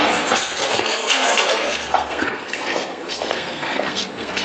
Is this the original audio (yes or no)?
no